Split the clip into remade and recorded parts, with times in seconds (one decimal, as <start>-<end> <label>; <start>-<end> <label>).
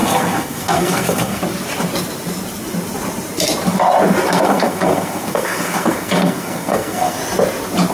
0.0-1.4 remade; 1.4-4.3 recorded; 4.3-7.2 remade; 7.2-7.9 recorded